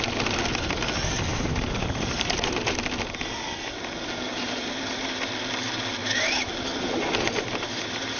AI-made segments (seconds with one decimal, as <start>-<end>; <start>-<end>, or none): 1.3-2.5; 4.3-5.3; 6.0-8.2